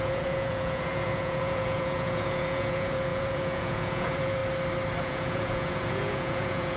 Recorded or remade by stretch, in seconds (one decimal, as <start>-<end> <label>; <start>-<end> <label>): 0.0-4.4 remade; 4.4-5.0 recorded; 5.0-6.8 remade